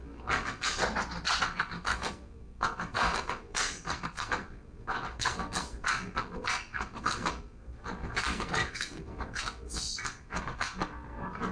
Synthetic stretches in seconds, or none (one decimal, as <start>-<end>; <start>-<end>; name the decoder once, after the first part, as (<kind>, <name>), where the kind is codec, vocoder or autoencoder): 0.0-0.8 (codec, SNAC); 1.4-11.5